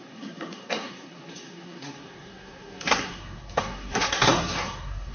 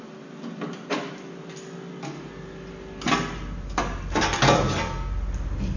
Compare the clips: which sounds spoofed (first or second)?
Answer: first